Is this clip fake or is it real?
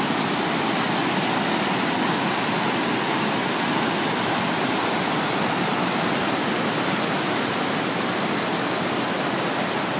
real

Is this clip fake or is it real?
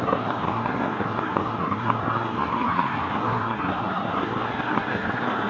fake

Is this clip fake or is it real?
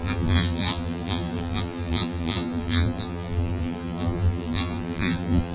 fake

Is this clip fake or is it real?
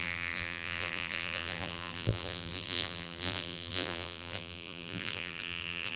fake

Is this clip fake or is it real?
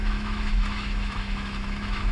fake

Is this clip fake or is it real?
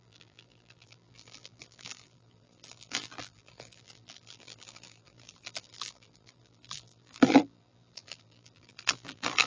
fake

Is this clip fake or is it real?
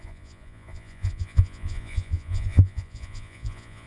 fake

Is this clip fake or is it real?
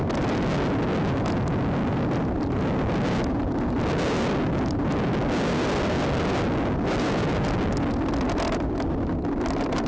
real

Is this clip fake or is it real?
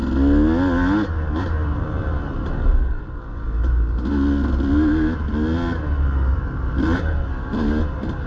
real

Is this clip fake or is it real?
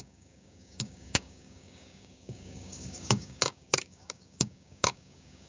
fake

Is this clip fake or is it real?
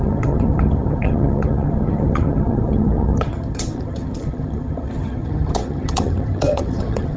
fake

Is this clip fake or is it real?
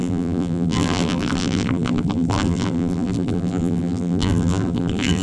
fake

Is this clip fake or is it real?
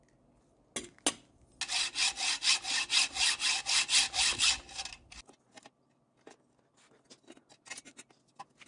real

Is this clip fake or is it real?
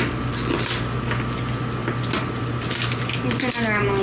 real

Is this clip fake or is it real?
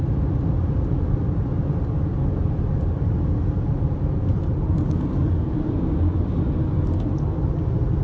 real